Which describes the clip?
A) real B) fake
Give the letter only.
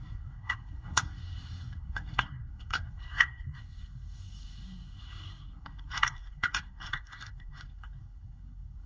B